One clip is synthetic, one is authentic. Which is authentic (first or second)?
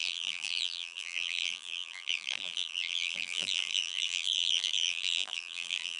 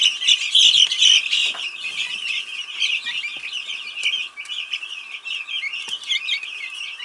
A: second